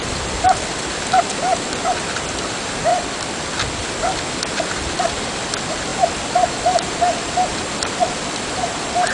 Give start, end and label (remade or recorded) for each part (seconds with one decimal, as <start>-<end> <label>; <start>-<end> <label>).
0.0-2.9 remade; 2.9-3.8 recorded; 3.8-5.9 remade; 5.9-8.0 recorded; 8.0-9.1 remade